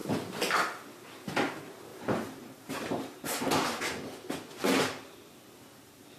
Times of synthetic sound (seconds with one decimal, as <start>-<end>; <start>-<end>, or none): 1.9-3.8